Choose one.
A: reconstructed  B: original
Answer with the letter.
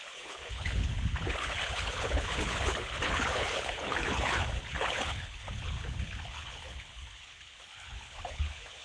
A